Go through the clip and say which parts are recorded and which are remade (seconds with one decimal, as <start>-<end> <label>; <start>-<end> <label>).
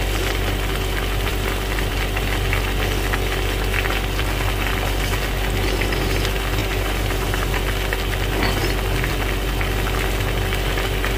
0.0-6.6 recorded; 6.6-7.6 remade; 7.6-11.2 recorded